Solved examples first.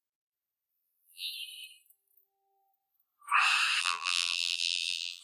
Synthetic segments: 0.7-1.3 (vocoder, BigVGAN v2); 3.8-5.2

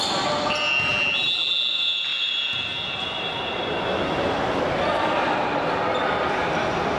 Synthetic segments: 0.9-1.7 (vocoder, BigVGAN v2)

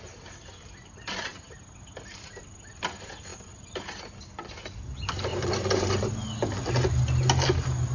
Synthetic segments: 5.3-6.1 (vocoder, BigVGAN v2)

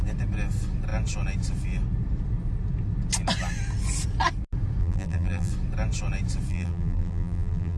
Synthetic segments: 4.8-5.5 (vocoder, BigVGAN v2); 6.5-7.8

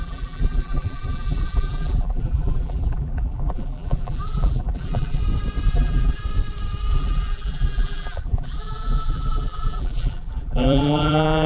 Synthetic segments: 0.0-5.2 (vocoder, BigVGAN v2); 5.7-6.2; 6.9-11.5

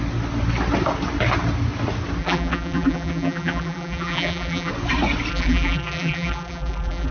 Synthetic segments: 2.2-4.7 (vocoder, BigVGAN v2); 5.3-7.1